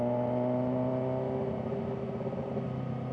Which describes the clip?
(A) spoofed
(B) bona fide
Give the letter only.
B